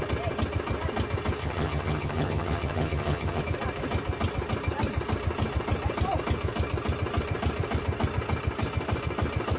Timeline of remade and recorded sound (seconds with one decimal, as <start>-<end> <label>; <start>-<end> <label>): 0.0-1.4 recorded; 1.4-3.4 remade; 3.4-9.6 recorded